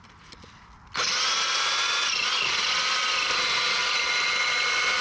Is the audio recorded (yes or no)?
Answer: yes